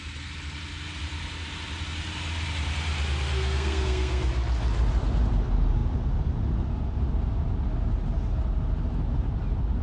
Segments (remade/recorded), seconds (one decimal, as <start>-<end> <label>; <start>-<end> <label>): 0.0-3.3 recorded; 3.3-4.3 remade; 4.3-9.8 recorded

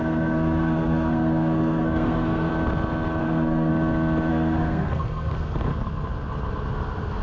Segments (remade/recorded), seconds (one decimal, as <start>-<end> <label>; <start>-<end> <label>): 0.0-2.5 remade; 2.5-3.2 recorded; 3.2-3.7 remade; 3.7-4.3 recorded; 4.3-5.7 remade; 5.7-7.2 recorded

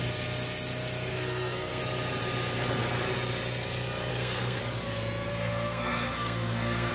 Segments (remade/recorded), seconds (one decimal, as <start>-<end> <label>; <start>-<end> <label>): 0.0-1.1 recorded; 1.1-1.8 remade; 1.8-4.1 recorded; 4.1-4.6 remade; 4.6-5.3 recorded; 5.3-6.9 remade